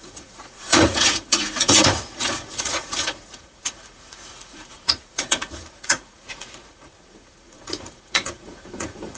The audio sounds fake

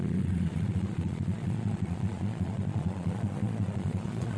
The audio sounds fake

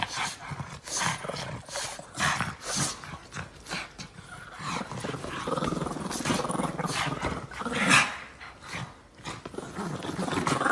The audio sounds real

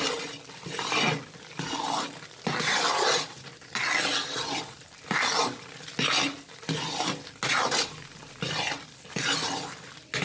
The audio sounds real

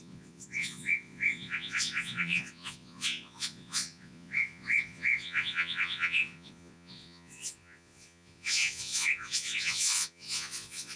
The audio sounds fake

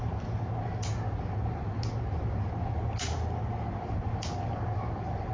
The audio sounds real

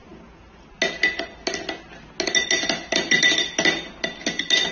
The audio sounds real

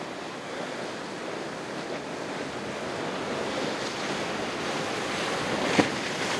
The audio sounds real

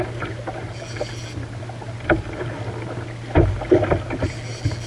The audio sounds real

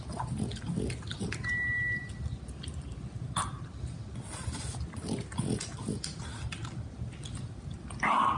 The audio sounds real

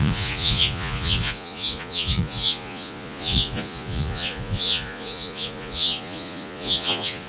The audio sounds fake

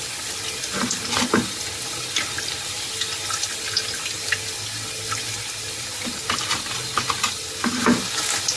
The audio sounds real